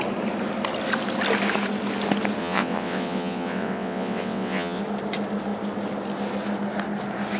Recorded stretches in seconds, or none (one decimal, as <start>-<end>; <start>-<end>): 0.0-2.4; 4.8-7.4